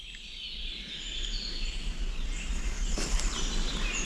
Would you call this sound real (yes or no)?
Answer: yes